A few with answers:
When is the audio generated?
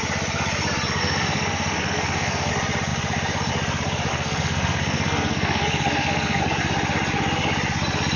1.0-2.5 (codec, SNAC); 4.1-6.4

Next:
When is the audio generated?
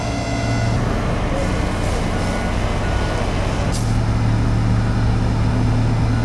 none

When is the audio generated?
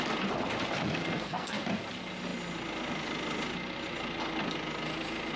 1.0-1.6 (codec, SNAC)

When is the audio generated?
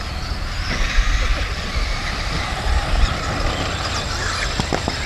1.3-2.3 (vocoder, BigVGAN v2)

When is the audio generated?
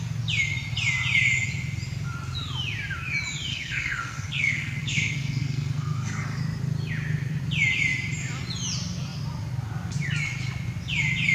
3.5-6.4 (codec, SNAC)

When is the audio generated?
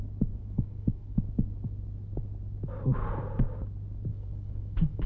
0.4-1.2 (codec, SNAC); 4.1-5.1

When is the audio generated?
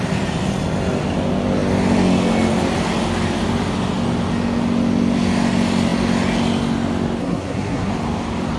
7.2-7.9 (codec, SNAC)